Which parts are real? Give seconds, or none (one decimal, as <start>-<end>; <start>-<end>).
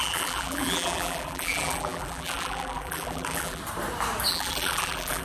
3.6-4.3